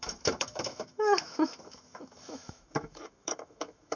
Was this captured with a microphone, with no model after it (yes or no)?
no